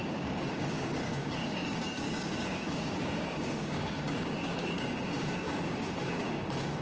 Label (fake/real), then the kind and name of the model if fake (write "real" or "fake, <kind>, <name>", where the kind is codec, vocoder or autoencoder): fake, codec, DAC